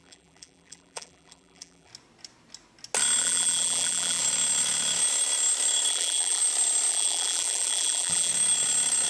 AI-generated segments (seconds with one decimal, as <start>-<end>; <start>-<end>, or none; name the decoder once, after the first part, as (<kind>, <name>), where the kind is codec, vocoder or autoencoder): 0.0-1.9 (vocoder, BigVGAN v2); 3.2-4.2; 5.9-6.4; 6.9-8.3